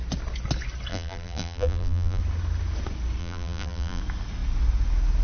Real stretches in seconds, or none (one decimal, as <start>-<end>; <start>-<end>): 0.0-0.9; 2.2-3.2; 4.0-5.2